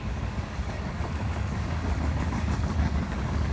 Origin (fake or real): fake